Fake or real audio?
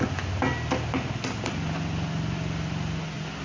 real